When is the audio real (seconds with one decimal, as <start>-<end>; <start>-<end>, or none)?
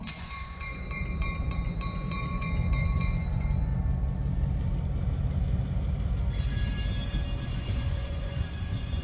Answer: 3.7-7.5